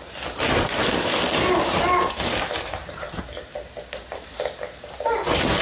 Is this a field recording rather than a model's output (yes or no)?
yes